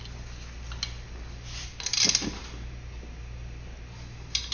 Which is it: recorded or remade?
recorded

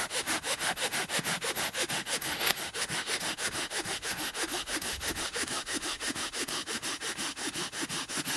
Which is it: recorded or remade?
remade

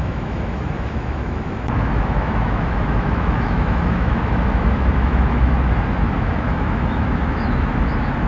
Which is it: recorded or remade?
remade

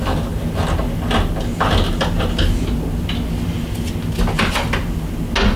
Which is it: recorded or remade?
recorded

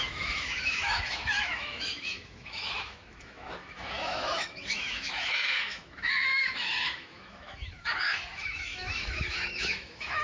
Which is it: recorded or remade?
remade